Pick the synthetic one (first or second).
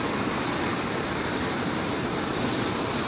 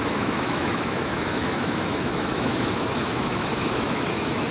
second